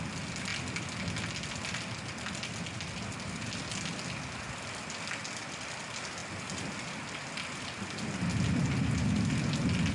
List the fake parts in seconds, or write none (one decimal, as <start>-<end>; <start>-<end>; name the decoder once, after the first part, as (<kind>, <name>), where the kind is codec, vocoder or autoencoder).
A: none